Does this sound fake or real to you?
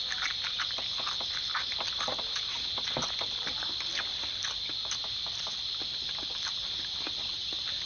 fake